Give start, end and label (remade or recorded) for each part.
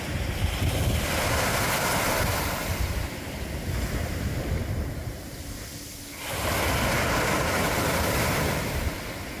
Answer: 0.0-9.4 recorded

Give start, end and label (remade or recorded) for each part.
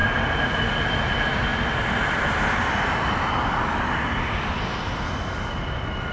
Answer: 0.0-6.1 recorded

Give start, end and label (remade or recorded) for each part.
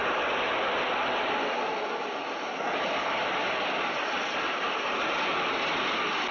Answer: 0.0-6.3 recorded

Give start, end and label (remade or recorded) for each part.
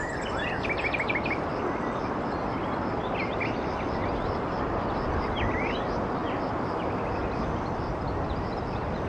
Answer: 0.0-9.1 recorded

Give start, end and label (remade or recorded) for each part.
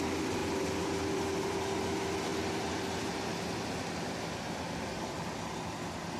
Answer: 0.0-6.2 recorded